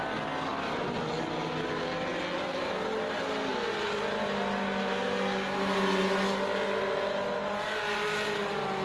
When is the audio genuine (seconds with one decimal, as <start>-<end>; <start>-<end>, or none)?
0.0-0.5; 1.1-8.8